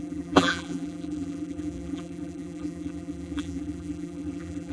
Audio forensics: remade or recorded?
remade